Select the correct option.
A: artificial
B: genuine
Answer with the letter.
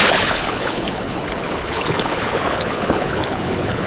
A